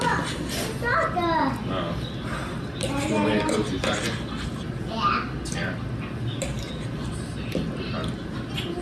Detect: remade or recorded recorded